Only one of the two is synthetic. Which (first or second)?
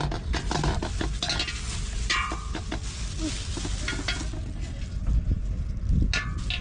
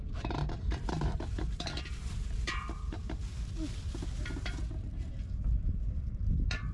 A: second